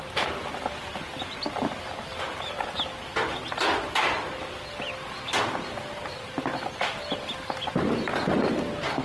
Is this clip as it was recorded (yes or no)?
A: yes